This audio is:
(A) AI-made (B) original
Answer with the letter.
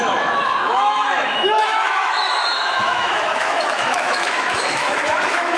A